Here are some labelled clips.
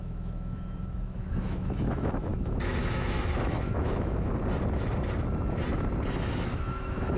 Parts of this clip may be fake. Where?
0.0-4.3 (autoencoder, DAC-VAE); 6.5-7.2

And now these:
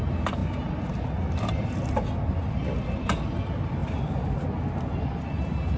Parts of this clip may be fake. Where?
none